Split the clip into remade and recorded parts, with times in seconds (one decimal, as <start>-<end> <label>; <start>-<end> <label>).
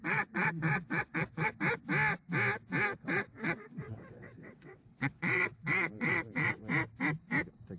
0.0-1.5 remade; 1.5-3.1 recorded; 3.1-6.6 remade; 6.6-7.8 recorded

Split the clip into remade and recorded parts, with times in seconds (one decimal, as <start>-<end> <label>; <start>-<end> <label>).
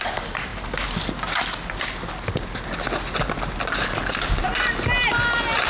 0.0-5.7 recorded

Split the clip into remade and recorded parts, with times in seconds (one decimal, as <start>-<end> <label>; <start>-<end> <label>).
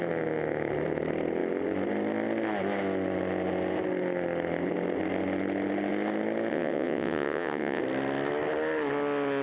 0.0-6.5 recorded; 6.5-7.8 remade; 7.8-9.4 recorded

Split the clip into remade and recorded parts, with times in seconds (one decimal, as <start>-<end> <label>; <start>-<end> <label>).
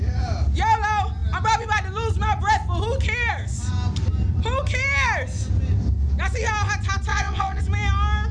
0.0-7.1 recorded; 7.1-7.6 remade; 7.6-8.3 recorded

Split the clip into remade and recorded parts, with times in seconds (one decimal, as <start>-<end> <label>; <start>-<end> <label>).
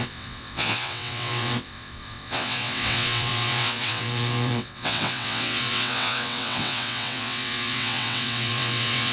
0.0-9.1 remade